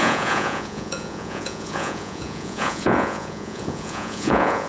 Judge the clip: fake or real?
fake